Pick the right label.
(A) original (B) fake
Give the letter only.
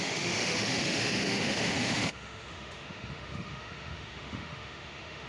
B